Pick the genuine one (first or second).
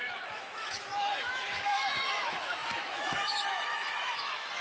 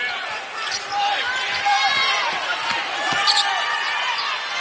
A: second